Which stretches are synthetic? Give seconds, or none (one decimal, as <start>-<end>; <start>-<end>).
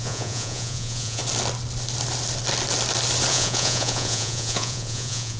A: 0.0-1.2; 3.3-5.4